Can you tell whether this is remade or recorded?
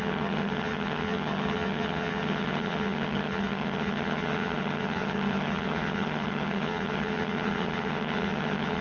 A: remade